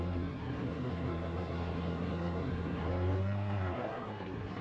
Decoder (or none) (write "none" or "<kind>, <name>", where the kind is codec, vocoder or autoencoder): codec, SNAC